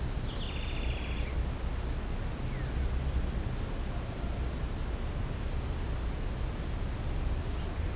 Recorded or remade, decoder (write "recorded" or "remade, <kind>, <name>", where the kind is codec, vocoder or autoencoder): recorded